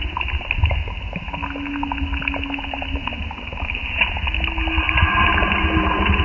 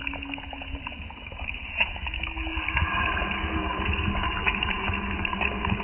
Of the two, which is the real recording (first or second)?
first